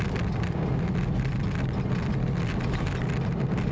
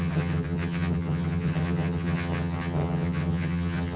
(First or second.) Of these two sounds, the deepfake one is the second